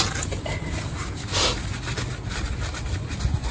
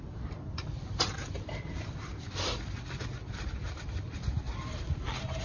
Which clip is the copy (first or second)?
second